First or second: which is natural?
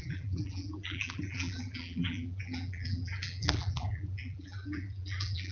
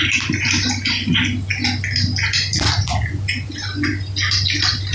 second